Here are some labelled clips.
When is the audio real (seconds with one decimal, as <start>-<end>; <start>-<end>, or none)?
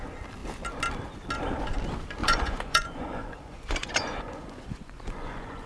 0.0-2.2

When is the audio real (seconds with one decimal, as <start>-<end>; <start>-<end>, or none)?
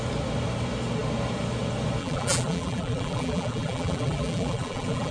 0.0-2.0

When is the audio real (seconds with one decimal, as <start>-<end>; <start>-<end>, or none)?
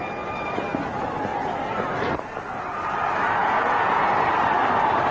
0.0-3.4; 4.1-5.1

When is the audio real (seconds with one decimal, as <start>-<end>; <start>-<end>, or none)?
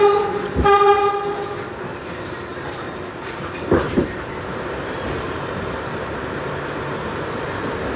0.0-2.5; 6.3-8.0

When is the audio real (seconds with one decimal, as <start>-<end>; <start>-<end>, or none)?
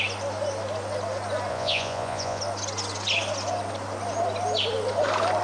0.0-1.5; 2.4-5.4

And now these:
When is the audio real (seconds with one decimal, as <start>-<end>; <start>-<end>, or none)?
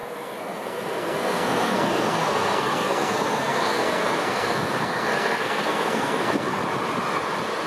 6.6-7.7